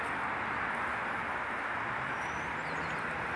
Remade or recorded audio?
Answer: recorded